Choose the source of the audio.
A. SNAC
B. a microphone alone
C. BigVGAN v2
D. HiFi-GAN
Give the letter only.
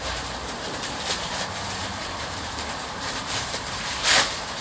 C